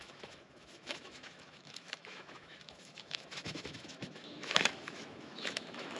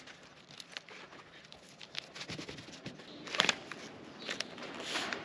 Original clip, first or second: second